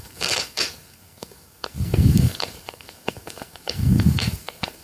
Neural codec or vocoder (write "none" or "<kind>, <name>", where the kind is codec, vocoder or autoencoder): codec, SNAC